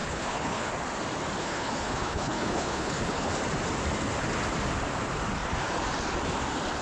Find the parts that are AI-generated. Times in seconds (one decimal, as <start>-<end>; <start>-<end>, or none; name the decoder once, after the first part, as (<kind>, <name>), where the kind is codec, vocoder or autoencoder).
0.0-0.7 (codec, HILCodec); 1.4-3.3